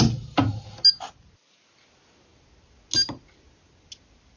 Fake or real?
real